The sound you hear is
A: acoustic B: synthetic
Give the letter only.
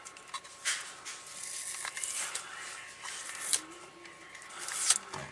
A